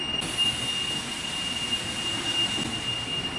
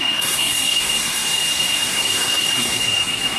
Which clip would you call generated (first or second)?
second